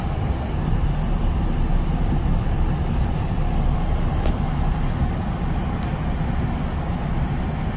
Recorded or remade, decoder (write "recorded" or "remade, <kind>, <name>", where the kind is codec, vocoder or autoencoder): recorded